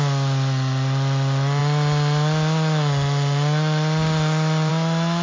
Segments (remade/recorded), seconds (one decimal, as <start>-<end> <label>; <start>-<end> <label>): 0.0-5.2 recorded